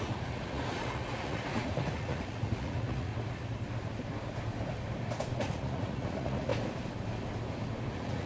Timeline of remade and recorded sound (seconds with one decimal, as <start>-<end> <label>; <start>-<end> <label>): 0.0-3.1 remade; 3.1-5.4 recorded; 5.4-6.5 remade; 6.5-7.9 recorded; 7.9-8.3 remade

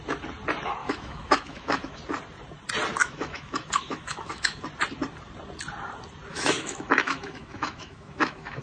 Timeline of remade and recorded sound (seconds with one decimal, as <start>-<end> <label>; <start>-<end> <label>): 0.0-0.8 recorded; 0.8-2.0 remade; 2.0-3.0 recorded; 3.0-4.6 remade; 4.6-6.3 recorded; 6.3-8.6 remade

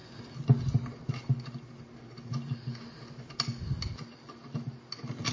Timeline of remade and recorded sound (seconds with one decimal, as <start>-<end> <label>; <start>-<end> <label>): 0.0-5.3 recorded

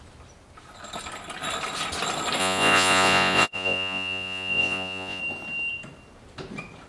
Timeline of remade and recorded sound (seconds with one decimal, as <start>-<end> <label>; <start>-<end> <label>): 0.0-2.4 recorded; 2.4-5.2 remade; 5.2-6.9 recorded